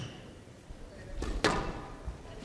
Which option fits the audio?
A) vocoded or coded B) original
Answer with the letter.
B